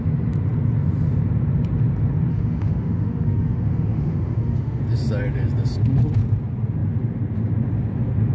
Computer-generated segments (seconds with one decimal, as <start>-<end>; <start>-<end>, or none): 2.3-4.8